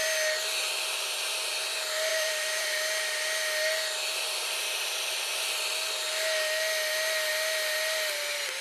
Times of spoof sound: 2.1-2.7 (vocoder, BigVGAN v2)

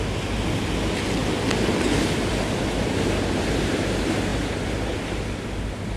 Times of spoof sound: none

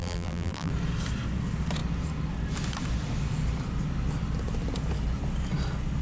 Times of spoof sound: 0.0-0.7 (vocoder, BigVGAN v2)

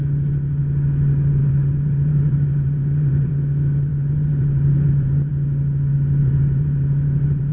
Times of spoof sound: 1.4-3.3 (vocoder, BigVGAN v2); 3.9-5.3; 5.9-7.5

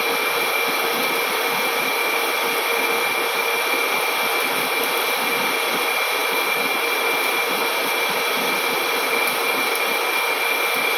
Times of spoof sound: none

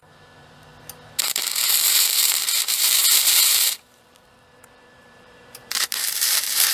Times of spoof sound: 0.0-0.7 (vocoder, BigVGAN v2); 1.2-6.7

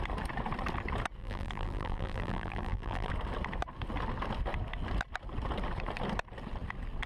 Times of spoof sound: 1.2-3.1 (vocoder, BigVGAN v2)